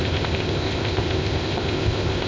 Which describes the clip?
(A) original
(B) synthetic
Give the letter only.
B